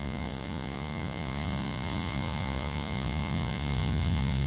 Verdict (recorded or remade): remade